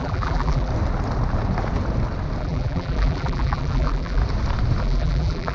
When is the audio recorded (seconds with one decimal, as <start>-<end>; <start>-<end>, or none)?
0.7-2.4; 4.2-4.8